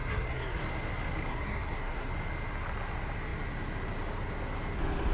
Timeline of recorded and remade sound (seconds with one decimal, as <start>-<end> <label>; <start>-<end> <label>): 0.0-0.6 remade; 0.6-1.3 recorded; 1.3-2.1 remade; 2.1-5.1 recorded